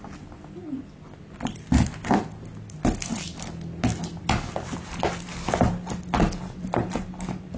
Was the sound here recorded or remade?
recorded